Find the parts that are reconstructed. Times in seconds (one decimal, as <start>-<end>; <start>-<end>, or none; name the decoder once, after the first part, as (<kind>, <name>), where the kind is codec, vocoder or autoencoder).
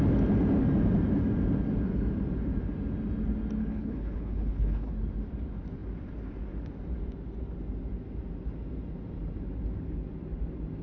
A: 3.6-4.9 (codec, HILCodec)